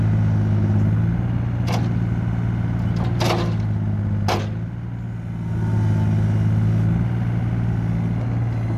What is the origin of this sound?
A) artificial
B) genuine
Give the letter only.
B